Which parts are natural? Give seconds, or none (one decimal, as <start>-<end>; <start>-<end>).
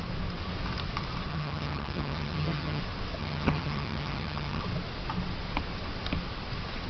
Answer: 0.0-1.3; 2.8-3.2; 4.6-6.9